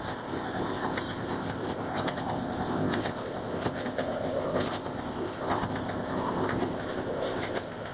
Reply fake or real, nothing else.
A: fake